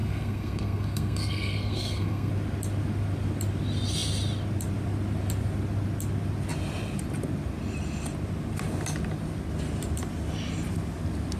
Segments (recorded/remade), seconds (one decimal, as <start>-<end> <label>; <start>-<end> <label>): 0.0-2.3 remade; 2.3-11.4 recorded